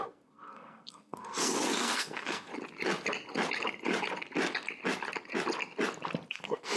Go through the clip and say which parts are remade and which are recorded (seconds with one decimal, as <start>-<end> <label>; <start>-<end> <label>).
0.0-2.5 remade; 2.5-6.3 recorded; 6.3-6.8 remade